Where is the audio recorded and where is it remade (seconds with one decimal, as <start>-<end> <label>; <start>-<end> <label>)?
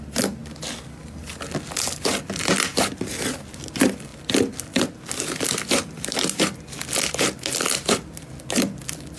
0.0-9.2 recorded